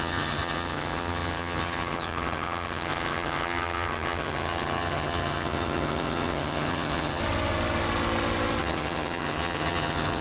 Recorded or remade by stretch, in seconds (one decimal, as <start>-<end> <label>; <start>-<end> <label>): 0.0-7.2 remade; 7.2-8.6 recorded; 8.6-10.2 remade